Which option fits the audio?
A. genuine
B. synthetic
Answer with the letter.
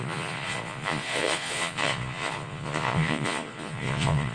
B